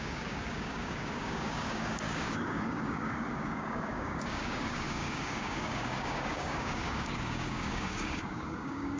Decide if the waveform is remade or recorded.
remade